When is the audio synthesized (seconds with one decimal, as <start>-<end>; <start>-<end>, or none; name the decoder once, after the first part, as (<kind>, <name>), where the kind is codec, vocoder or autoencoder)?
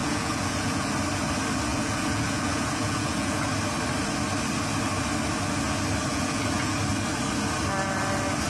0.0-0.9 (vocoder, Vocos); 1.7-3.5; 6.1-6.8